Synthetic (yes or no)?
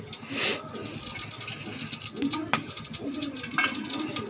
no